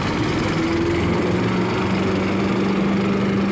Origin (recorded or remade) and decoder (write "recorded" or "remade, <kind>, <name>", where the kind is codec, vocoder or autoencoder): recorded